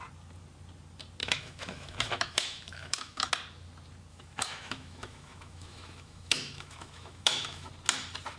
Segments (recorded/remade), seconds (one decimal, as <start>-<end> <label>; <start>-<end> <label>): 0.0-1.2 recorded; 1.2-3.3 remade; 3.3-4.1 recorded; 4.1-7.7 remade; 7.7-8.4 recorded